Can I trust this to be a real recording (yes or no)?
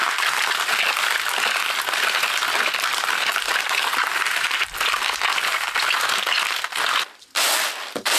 yes